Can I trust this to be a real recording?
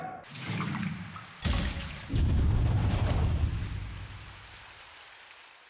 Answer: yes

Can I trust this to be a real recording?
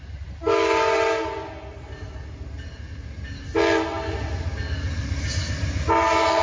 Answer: yes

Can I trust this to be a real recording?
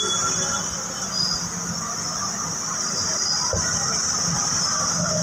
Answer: yes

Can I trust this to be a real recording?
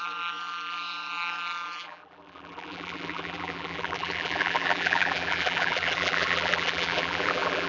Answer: no